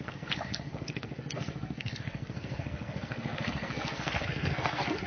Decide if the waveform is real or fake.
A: fake